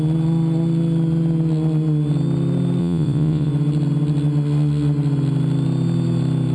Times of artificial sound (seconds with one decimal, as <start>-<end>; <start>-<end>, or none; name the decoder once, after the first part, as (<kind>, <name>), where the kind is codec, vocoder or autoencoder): 2.8-3.5 (vocoder, Vocos)